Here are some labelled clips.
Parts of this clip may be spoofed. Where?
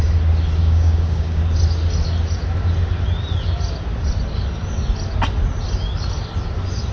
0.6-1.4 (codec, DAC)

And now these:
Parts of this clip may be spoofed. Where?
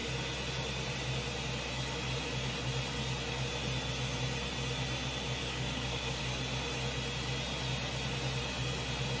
5.4-6.2 (codec, DAC)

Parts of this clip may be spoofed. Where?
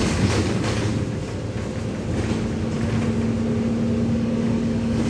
0.0-0.9 (codec, DAC); 4.0-5.1